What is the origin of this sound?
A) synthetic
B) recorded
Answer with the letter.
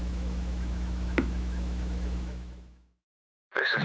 A